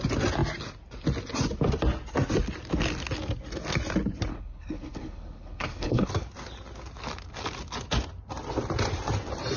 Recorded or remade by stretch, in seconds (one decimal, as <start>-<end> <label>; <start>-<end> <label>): 0.0-4.3 recorded; 4.3-6.1 remade; 6.1-9.6 recorded